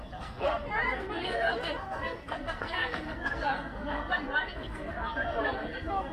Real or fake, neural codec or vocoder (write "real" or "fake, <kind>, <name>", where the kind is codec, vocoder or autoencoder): fake, codec, SNAC